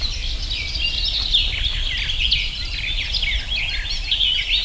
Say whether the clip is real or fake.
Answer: real